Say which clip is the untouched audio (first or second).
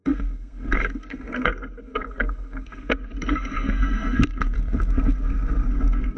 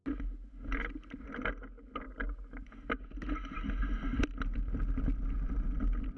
second